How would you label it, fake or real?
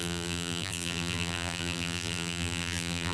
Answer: fake